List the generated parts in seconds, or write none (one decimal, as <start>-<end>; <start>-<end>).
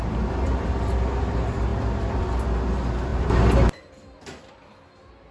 none